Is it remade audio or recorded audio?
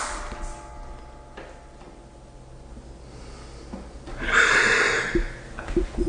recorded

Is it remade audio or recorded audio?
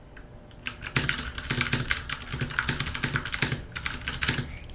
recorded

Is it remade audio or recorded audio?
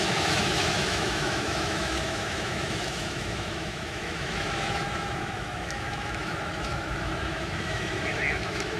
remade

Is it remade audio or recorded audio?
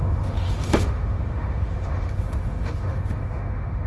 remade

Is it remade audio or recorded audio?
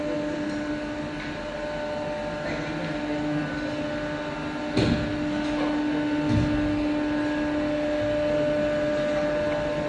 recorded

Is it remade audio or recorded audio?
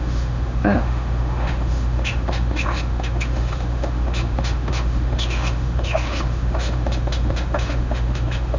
remade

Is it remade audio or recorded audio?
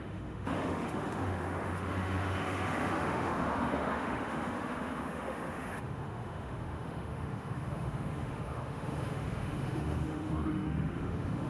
remade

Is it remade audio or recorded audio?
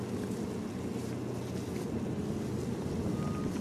recorded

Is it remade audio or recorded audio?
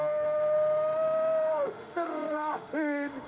remade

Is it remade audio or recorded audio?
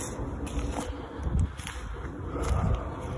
recorded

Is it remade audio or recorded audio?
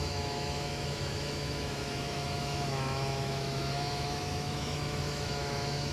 remade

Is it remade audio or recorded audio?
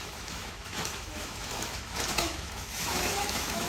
remade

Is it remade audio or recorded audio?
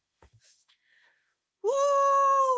remade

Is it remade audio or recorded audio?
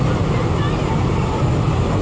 recorded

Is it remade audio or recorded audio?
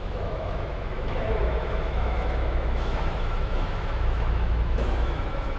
remade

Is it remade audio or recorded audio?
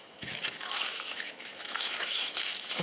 remade